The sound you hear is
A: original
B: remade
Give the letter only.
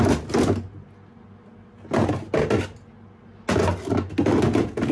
A